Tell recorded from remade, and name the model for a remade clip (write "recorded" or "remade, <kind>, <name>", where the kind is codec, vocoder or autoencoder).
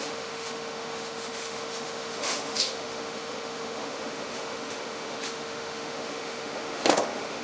remade, autoencoder, DAC-VAE